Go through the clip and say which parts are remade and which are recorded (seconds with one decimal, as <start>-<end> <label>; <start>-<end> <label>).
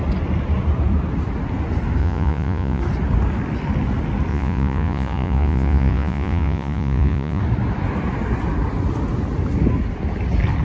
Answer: 0.0-2.0 recorded; 2.0-2.8 remade; 2.8-4.3 recorded; 4.3-7.4 remade; 7.4-10.6 recorded